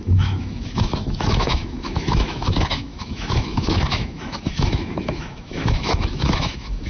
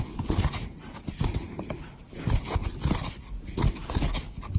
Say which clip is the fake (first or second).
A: first